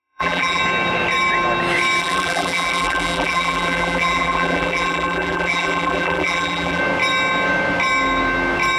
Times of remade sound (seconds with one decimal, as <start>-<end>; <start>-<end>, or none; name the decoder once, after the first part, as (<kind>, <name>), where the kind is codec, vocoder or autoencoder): 0.0-0.6 (vocoder, BigVGAN v2); 2.0-6.8